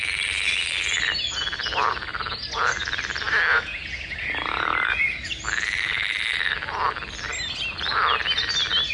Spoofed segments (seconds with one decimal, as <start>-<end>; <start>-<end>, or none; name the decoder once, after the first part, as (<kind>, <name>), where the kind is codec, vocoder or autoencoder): 3.5-5.3 (vocoder, Vocos)